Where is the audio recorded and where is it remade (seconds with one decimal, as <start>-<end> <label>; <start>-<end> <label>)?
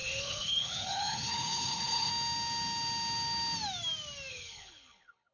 0.0-2.1 remade; 2.1-4.3 recorded; 4.3-5.3 remade